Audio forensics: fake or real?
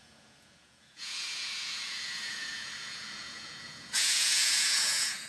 fake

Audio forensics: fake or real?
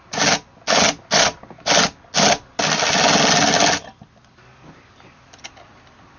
real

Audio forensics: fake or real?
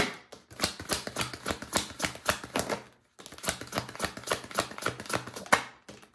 real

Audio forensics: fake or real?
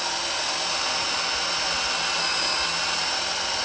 real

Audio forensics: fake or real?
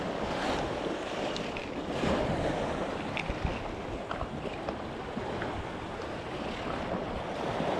fake